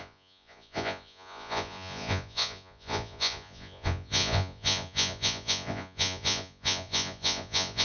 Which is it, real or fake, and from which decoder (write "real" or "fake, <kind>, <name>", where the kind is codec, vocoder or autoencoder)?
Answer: fake, vocoder, Vocos